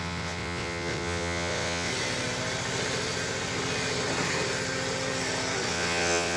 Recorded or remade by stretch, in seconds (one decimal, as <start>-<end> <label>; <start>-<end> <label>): 0.0-1.9 remade; 1.9-5.7 recorded; 5.7-6.4 remade

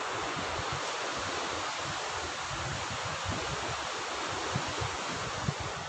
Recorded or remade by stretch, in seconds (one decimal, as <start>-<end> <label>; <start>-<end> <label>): 0.0-1.1 remade; 1.1-2.8 recorded; 2.8-3.5 remade; 3.5-4.5 recorded; 4.5-5.9 remade

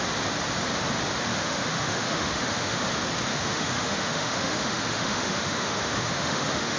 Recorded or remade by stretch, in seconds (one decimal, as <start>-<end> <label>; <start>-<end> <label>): 0.0-1.3 recorded; 1.3-2.8 remade; 2.8-3.3 recorded; 3.3-6.8 remade

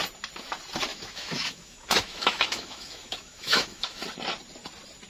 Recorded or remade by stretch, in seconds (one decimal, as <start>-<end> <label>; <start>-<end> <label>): 0.0-0.9 recorded; 0.9-4.0 remade; 4.0-5.1 recorded

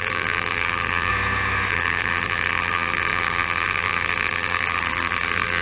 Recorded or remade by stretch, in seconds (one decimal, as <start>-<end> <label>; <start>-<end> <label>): 0.0-1.1 remade; 1.1-1.7 recorded; 1.7-5.6 remade

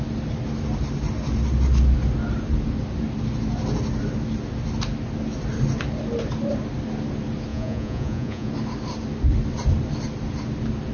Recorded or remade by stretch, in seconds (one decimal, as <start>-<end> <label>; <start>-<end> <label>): 0.0-7.5 recorded; 7.5-8.5 remade; 8.5-10.9 recorded

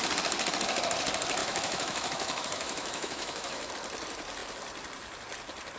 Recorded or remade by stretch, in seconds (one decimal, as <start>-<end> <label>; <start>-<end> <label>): 0.0-1.4 recorded; 1.4-3.7 remade; 3.7-5.8 recorded